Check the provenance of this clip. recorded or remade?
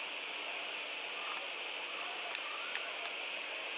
recorded